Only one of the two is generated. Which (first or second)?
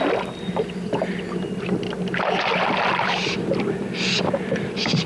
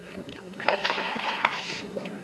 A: second